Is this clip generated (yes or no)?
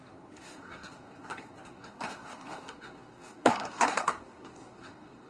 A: yes